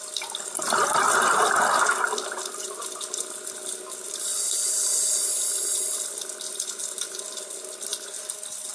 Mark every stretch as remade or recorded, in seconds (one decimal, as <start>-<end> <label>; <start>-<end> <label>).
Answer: 0.0-8.7 recorded